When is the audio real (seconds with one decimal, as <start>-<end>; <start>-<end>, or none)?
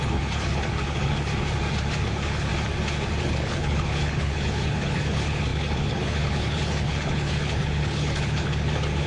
1.3-2.0; 2.5-3.2